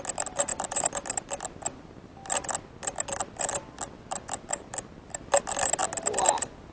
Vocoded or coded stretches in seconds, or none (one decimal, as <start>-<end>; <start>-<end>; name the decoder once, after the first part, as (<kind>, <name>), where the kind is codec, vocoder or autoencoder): none